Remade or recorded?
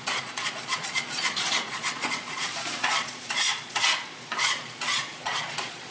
remade